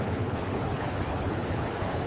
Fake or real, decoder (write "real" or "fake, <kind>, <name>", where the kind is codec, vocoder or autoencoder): fake, codec, HILCodec